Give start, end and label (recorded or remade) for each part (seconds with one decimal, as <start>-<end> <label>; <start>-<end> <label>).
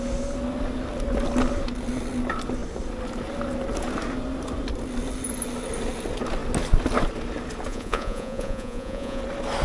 0.0-7.7 recorded; 7.7-9.2 remade; 9.2-9.6 recorded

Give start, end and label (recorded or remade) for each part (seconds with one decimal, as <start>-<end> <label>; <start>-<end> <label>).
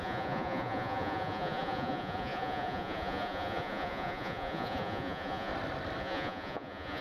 0.0-5.5 remade; 5.5-6.0 recorded; 6.0-7.0 remade